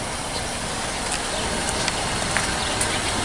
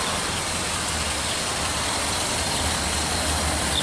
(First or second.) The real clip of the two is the first